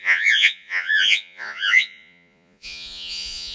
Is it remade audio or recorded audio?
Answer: remade